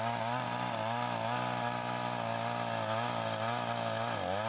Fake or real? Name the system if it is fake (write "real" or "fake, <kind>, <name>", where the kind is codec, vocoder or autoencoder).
real